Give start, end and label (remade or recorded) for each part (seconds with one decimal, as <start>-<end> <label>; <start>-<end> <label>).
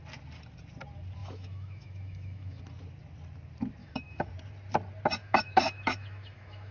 0.0-1.2 recorded; 1.2-2.6 remade; 2.6-3.8 recorded; 3.8-4.3 remade; 4.3-5.2 recorded; 5.2-6.7 remade